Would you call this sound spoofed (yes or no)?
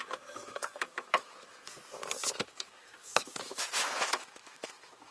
yes